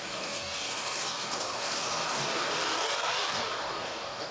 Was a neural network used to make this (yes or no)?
yes